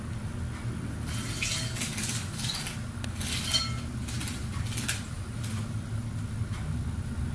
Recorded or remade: recorded